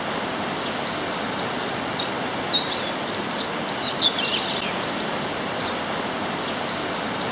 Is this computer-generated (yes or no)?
no